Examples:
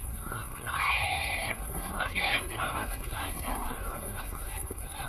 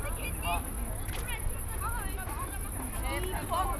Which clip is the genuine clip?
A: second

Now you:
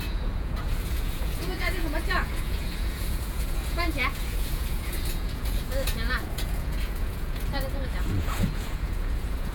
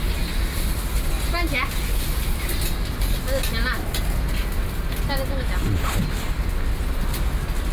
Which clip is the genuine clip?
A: second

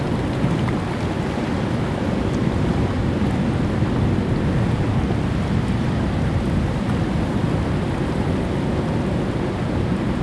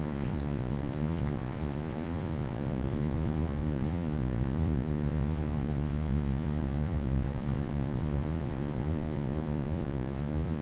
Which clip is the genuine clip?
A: first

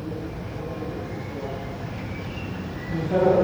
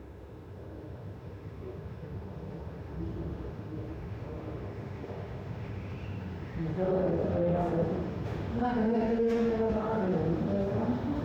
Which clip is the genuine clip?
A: first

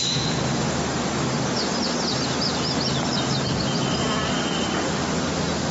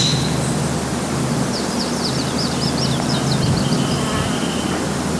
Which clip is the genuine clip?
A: first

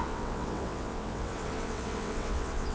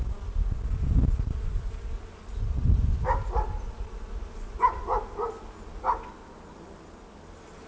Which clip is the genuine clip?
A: second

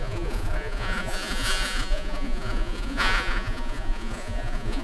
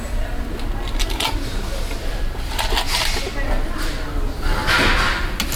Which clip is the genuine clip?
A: second